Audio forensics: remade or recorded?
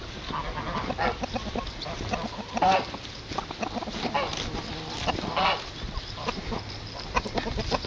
recorded